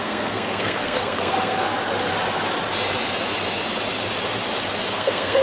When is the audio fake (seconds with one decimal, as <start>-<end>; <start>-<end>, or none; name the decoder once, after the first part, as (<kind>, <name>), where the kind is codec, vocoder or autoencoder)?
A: 0.0-1.7 (codec, SNAC); 4.9-5.4

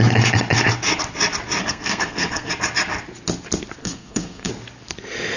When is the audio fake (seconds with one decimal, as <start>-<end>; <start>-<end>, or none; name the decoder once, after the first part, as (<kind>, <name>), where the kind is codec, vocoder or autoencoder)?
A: 1.6-2.5 (codec, SNAC); 3.8-4.5

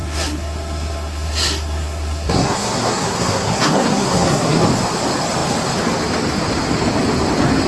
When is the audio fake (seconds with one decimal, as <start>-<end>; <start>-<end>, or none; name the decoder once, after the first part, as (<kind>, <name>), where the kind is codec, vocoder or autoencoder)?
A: 0.0-4.6 (codec, SNAC)

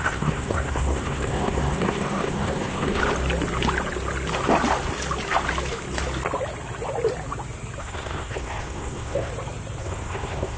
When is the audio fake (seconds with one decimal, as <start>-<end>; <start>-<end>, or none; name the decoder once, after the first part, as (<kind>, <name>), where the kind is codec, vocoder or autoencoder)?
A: 0.0-3.0 (codec, SNAC); 7.8-9.3; 9.8-10.6

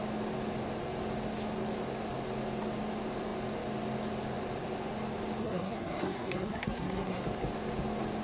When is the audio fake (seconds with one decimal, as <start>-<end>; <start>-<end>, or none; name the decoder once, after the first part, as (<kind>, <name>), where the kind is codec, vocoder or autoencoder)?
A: 5.4-7.2 (codec, SNAC)